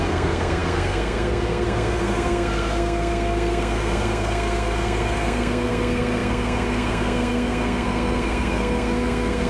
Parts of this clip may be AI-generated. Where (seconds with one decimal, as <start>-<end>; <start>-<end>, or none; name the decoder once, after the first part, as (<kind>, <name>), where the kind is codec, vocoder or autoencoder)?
0.0-9.5 (codec, SNAC)